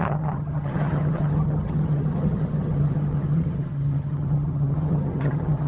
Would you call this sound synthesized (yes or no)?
yes